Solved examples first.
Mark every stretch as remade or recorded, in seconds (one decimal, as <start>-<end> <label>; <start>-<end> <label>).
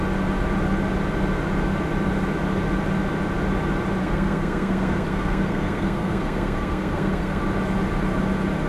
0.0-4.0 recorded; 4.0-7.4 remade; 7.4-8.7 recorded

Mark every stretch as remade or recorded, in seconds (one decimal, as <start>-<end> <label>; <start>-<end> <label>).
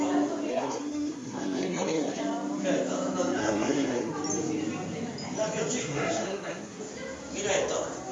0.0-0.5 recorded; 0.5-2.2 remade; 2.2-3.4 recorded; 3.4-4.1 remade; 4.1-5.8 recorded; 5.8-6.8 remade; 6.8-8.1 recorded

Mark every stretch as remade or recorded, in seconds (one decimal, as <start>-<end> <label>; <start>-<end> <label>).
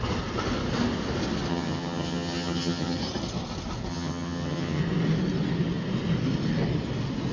0.0-1.5 recorded; 1.5-3.0 remade; 3.0-3.9 recorded; 3.9-4.8 remade; 4.8-7.3 recorded